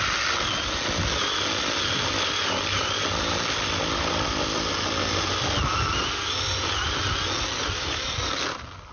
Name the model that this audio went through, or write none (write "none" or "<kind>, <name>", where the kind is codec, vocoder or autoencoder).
none